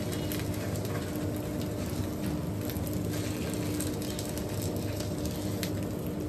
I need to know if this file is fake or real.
real